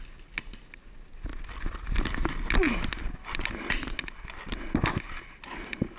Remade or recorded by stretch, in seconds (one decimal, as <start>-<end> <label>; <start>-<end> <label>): 0.0-6.0 recorded